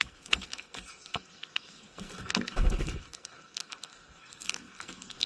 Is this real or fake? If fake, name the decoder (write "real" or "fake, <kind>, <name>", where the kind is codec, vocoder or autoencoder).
fake, codec, SNAC